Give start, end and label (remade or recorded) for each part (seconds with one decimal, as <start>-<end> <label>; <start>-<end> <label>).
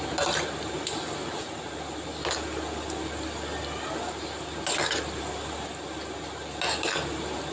0.0-7.5 recorded